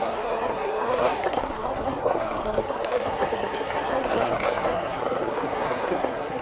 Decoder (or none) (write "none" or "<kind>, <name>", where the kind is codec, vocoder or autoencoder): codec, SNAC